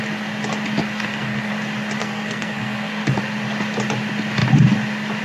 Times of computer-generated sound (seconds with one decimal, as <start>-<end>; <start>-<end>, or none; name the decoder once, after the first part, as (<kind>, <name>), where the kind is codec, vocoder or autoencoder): 0.8-1.5 (codec, SNAC); 2.0-3.2